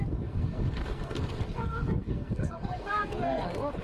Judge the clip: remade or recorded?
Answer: remade